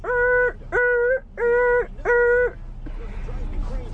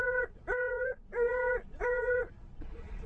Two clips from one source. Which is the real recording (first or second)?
first